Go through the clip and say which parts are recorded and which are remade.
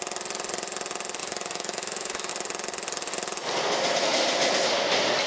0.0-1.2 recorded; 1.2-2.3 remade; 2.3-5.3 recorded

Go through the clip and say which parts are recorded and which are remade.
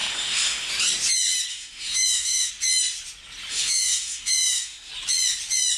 0.0-0.7 remade; 0.7-1.5 recorded; 1.5-2.5 remade; 2.5-3.5 recorded; 3.5-4.9 remade; 4.9-5.8 recorded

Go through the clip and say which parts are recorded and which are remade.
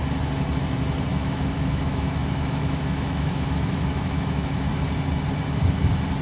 0.0-1.1 recorded; 1.1-4.7 remade; 4.7-6.2 recorded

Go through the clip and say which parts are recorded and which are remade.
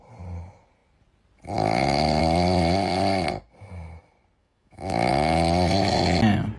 0.0-4.4 recorded; 4.4-5.1 remade; 5.1-6.6 recorded